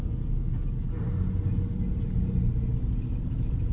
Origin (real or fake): real